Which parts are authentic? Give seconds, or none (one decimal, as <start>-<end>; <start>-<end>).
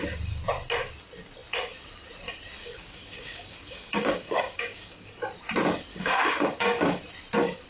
0.0-2.6; 5.2-5.9; 7.0-7.7